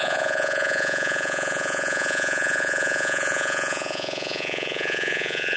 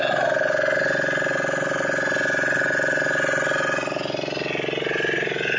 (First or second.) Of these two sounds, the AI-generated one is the first